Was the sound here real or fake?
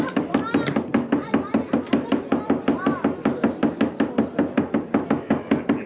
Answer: real